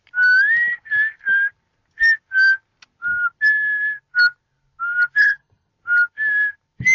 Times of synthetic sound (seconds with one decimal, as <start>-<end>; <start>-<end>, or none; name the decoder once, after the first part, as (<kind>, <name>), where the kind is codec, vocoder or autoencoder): 5.2-5.7 (codec, HILCodec)